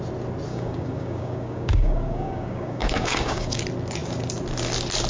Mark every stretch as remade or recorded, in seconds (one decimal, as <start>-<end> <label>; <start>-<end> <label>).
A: 0.0-0.5 recorded; 0.5-3.6 remade; 3.6-5.1 recorded